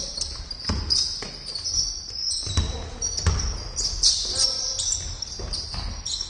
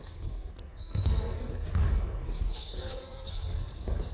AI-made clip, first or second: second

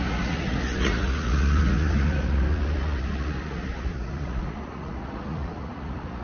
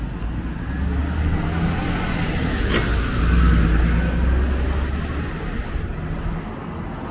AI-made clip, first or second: first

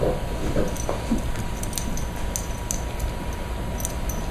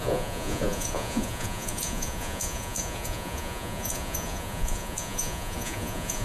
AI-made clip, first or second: second